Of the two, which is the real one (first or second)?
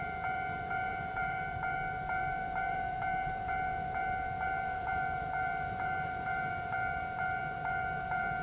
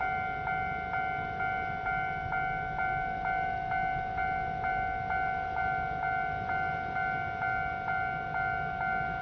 second